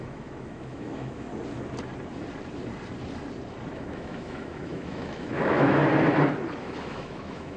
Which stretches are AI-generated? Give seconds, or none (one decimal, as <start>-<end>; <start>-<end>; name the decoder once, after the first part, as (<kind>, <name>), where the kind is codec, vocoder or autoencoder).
0.0-1.3 (autoencoder, DAC-VAE); 3.7-5.8; 6.6-7.6